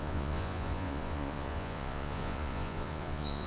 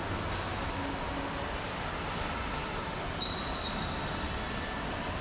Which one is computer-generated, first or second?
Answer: first